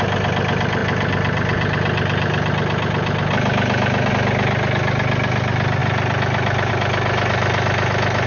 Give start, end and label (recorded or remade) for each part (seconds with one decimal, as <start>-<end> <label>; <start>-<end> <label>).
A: 0.0-8.3 recorded